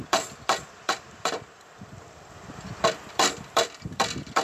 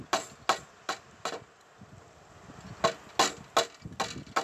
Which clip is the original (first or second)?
second